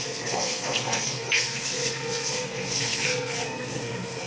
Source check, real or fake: fake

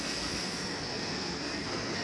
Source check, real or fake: fake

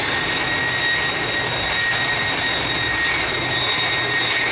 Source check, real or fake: real